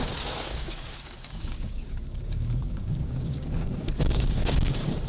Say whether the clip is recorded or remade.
remade